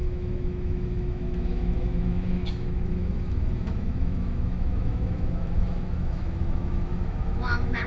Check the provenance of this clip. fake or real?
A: fake